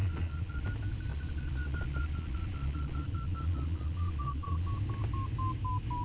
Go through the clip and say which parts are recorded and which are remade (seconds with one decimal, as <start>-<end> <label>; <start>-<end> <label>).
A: 0.0-0.6 remade; 0.6-1.1 recorded; 1.1-4.7 remade; 4.7-6.0 recorded